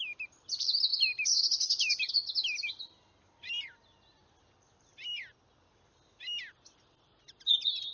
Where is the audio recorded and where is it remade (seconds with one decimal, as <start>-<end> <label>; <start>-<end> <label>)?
0.0-7.9 recorded